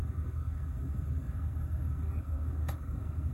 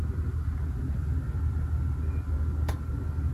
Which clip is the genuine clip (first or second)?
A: second